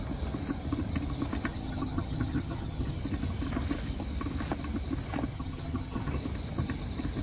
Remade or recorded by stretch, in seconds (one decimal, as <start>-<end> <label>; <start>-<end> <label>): 0.0-1.5 recorded; 1.5-3.0 remade; 3.0-5.3 recorded; 5.3-6.1 remade; 6.1-7.2 recorded

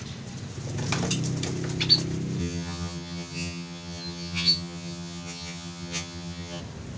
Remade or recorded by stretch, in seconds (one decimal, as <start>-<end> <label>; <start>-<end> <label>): 0.0-2.4 recorded; 2.4-6.6 remade; 6.6-7.0 recorded

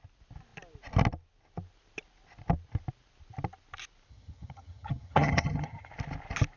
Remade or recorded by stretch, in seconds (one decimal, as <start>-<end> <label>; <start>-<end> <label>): 0.0-4.1 recorded; 4.1-5.9 remade; 5.9-6.6 recorded